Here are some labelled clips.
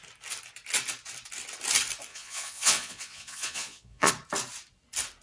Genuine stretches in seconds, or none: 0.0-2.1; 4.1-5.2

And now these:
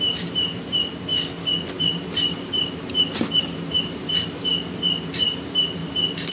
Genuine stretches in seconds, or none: 1.1-1.7; 4.5-5.1; 5.8-6.3

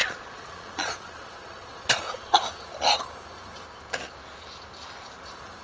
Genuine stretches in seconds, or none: 2.4-5.6

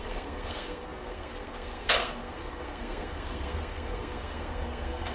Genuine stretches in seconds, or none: none

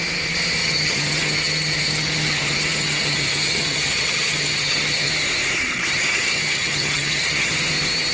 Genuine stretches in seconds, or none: 0.0-0.6; 5.1-6.0; 7.5-8.1

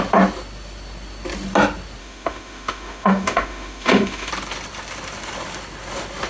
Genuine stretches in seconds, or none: 0.0-2.0; 4.3-6.3

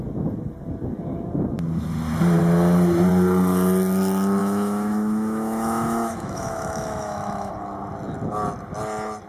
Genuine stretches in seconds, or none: 0.0-4.4; 7.5-9.3